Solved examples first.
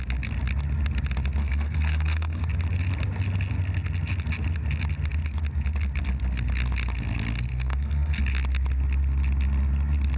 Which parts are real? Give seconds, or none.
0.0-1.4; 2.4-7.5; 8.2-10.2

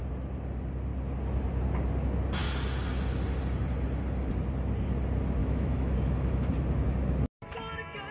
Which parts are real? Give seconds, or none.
0.0-5.4; 6.5-8.1

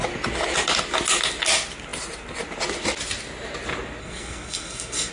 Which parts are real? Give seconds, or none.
0.0-4.0

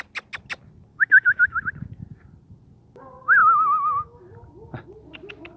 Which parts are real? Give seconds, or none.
0.0-0.9; 1.6-3.4; 4.2-5.6

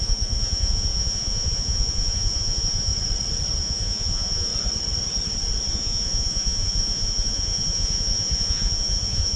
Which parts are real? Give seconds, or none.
2.9-3.6; 4.5-5.7